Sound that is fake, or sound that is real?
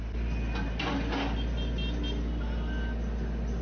real